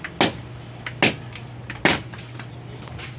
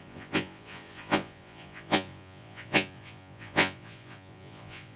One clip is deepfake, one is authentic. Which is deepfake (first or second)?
second